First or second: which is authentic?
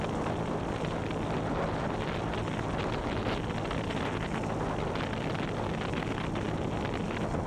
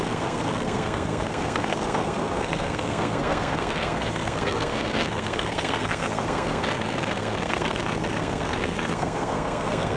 first